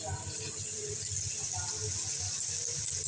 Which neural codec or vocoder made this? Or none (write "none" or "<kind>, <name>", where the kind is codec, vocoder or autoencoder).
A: none